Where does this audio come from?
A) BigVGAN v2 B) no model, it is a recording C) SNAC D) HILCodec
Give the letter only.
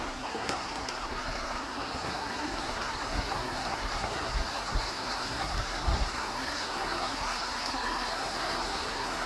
C